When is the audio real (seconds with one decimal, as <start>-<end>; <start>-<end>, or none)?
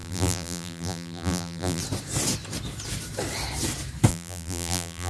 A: 1.8-4.1